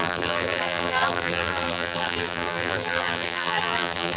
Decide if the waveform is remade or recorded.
remade